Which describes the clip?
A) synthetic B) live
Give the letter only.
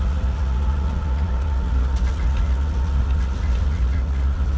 A